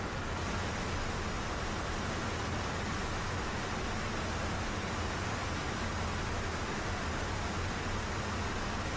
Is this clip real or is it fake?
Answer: real